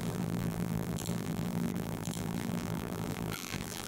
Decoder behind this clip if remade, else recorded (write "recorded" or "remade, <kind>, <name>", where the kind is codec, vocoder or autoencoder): remade, vocoder, BigVGAN v2